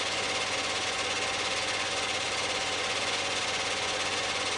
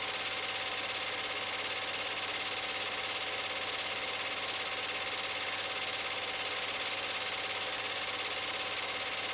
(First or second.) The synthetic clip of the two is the first